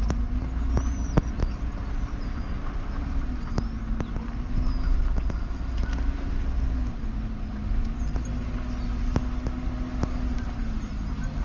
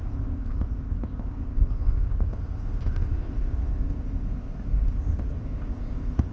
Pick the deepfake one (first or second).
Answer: second